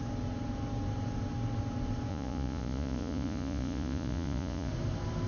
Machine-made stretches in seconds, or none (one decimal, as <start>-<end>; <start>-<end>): 2.1-4.7